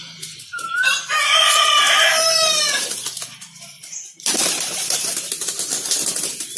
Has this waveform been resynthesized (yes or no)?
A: no